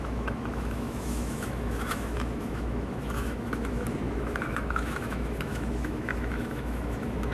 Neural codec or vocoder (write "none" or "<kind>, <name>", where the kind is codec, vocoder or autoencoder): autoencoder, DAC-VAE